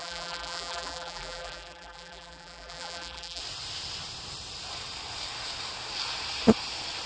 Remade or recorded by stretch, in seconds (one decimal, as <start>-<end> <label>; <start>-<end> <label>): 0.0-3.4 remade; 3.4-7.1 recorded